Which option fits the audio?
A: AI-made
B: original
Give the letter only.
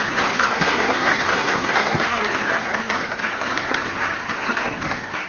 A